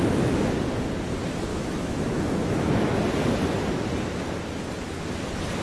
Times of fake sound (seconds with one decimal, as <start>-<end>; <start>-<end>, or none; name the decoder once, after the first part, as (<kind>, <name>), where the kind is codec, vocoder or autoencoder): 1.5-3.0 (autoencoder, DAC-VAE)